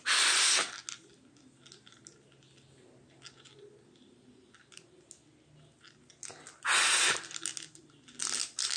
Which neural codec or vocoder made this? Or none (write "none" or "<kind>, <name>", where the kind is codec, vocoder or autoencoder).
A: none